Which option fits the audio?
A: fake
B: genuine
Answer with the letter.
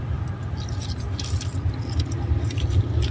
B